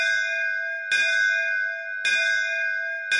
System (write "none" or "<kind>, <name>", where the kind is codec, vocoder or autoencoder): none